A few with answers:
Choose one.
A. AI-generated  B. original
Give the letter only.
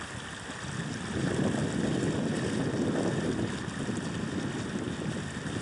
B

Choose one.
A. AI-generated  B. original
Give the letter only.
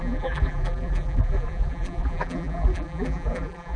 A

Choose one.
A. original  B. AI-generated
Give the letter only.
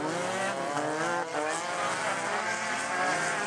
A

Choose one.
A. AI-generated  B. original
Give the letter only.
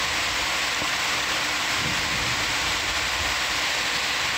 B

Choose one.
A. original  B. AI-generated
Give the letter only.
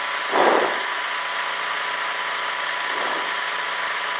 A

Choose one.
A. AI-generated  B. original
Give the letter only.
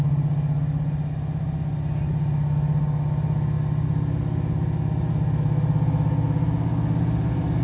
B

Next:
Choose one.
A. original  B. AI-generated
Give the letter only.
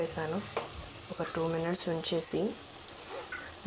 A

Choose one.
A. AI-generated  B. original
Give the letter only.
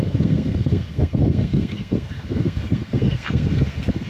A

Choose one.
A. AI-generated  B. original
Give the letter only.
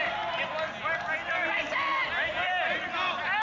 B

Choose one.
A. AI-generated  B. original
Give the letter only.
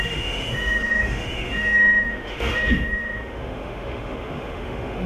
A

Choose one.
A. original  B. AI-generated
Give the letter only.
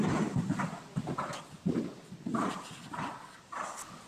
A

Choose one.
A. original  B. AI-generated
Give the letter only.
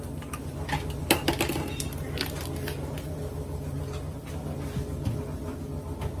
A